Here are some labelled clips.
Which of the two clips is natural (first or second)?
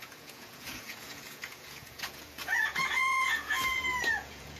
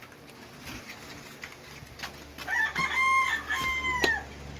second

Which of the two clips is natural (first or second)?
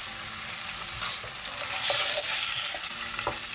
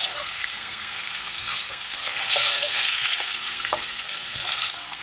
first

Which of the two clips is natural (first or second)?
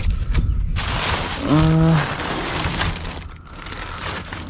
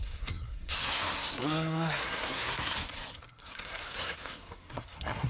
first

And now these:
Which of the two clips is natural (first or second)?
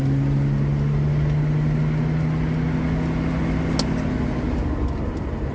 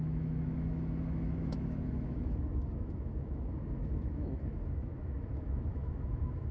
first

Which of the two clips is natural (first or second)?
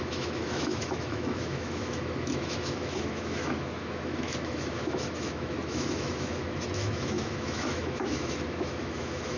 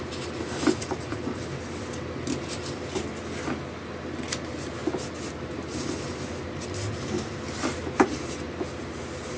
second